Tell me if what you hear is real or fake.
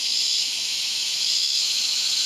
fake